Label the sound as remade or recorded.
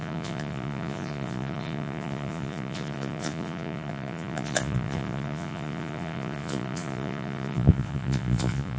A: remade